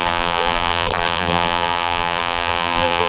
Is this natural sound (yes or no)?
no